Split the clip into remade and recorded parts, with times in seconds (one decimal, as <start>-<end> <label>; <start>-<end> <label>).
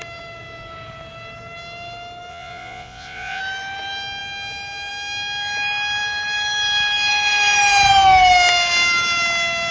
0.0-2.3 recorded; 2.3-3.4 remade; 3.4-9.7 recorded